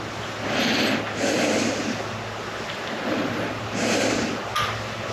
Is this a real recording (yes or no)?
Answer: yes